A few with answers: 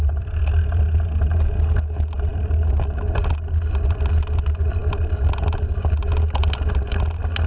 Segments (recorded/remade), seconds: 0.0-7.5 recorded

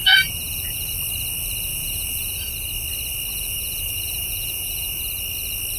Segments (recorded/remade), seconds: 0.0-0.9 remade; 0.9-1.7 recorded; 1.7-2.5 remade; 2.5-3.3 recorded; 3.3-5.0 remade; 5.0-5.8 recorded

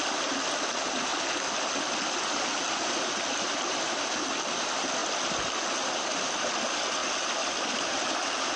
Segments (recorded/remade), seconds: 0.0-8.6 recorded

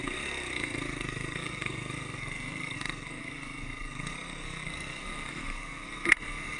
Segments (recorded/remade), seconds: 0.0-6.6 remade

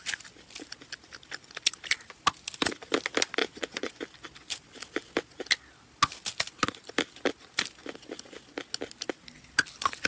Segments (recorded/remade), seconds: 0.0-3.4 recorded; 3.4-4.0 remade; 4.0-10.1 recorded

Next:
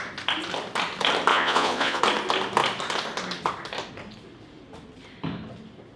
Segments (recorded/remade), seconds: 0.0-1.3 recorded; 1.3-2.0 remade; 2.0-6.0 recorded

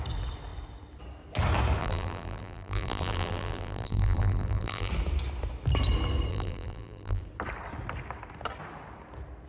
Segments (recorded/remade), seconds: 0.0-1.8 recorded; 1.8-4.9 remade; 4.9-6.3 recorded; 6.3-7.2 remade; 7.2-9.5 recorded

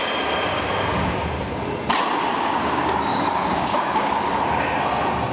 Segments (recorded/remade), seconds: 0.0-0.5 recorded; 0.5-1.2 remade; 1.2-3.1 recorded; 3.1-4.4 remade; 4.4-5.3 recorded